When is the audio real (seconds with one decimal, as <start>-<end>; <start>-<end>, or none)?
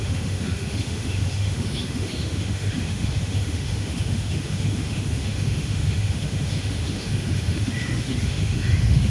none